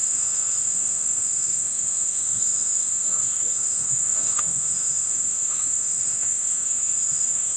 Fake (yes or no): yes